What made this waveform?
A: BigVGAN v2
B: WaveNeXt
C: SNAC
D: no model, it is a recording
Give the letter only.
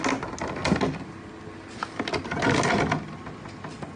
D